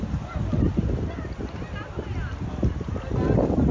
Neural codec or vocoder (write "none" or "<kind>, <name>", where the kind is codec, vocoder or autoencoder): none